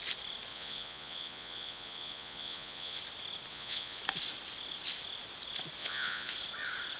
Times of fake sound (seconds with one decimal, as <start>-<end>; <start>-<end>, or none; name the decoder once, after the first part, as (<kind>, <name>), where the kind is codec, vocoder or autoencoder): 0.5-3.0 (vocoder, Vocos); 3.5-4.0; 5.8-6.3